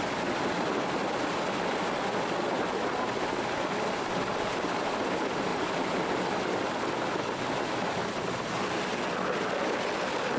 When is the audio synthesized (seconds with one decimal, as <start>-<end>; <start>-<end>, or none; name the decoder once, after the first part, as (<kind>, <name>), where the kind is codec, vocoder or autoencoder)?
5.5-6.2 (vocoder, BigVGAN v2)